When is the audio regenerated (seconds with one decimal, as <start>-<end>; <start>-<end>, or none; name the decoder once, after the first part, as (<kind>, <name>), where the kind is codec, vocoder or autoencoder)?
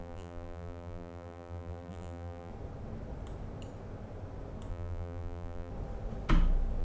0.0-2.5 (vocoder, BigVGAN v2); 4.7-5.7